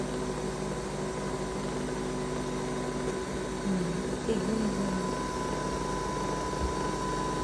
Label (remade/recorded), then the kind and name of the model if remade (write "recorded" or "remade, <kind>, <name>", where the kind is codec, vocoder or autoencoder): recorded